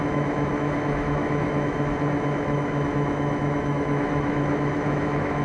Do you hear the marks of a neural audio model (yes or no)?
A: yes